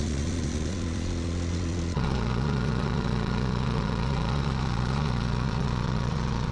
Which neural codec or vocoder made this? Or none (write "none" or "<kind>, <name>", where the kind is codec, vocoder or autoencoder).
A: vocoder, Vocos